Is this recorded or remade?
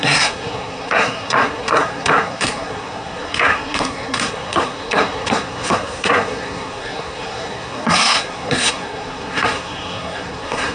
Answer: remade